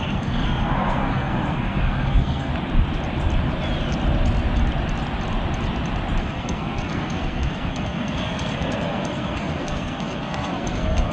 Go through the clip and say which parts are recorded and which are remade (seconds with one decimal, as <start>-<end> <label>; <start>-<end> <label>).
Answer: 0.0-2.5 remade; 2.5-6.2 recorded; 6.2-11.1 remade